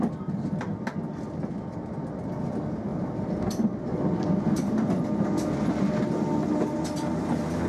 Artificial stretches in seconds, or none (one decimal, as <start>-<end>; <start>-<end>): none